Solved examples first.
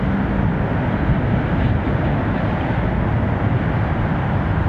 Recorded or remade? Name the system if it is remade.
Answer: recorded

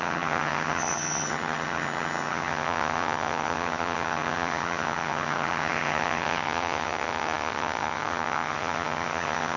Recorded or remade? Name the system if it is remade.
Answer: remade, vocoder, HiFi-GAN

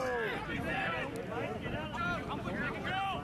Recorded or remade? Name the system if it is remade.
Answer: recorded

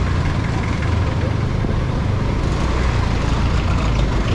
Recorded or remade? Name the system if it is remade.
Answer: recorded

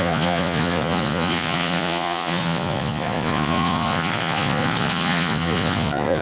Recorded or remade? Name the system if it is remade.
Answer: remade, vocoder, Vocos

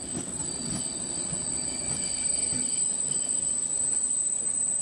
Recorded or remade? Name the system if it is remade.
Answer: recorded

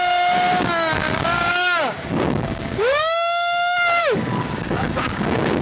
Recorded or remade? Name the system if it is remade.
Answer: remade, codec, DAC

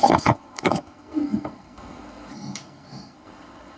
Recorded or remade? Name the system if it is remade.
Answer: remade, codec, SNAC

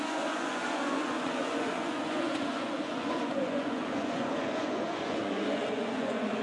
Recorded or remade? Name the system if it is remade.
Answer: remade, vocoder, Vocos